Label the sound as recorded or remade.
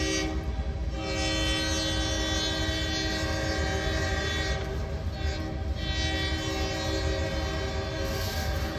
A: recorded